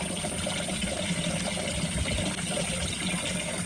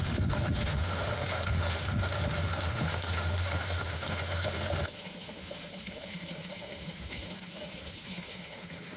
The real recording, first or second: first